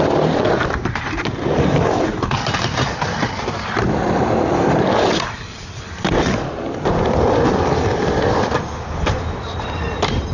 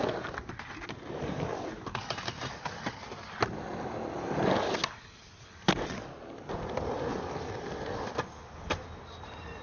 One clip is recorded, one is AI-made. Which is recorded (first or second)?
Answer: second